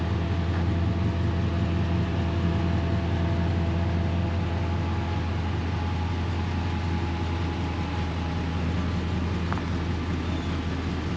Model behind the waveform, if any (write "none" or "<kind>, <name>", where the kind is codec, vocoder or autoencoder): none